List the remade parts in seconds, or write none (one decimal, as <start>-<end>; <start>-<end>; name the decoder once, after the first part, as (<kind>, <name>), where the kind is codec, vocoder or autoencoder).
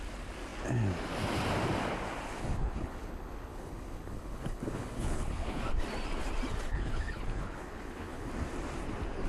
2.4-5.6 (codec, HILCodec); 6.7-8.3